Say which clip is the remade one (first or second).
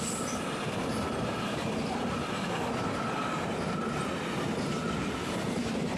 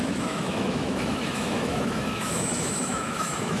second